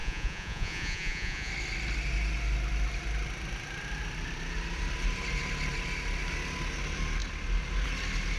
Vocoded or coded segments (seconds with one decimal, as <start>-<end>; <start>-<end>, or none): 0.0-1.5